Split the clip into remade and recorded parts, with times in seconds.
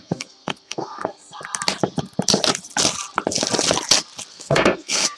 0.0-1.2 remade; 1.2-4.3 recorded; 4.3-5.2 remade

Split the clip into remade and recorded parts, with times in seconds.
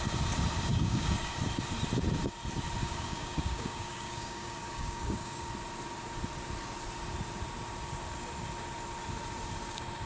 0.0-0.7 recorded; 0.7-1.3 remade; 1.3-2.8 recorded; 2.8-5.5 remade; 5.5-10.1 recorded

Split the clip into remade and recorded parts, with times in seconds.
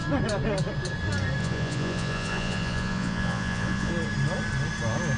0.0-1.4 recorded; 1.4-3.9 remade; 3.9-5.2 recorded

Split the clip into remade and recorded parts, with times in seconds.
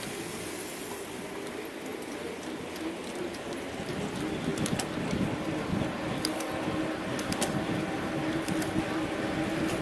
0.0-9.8 recorded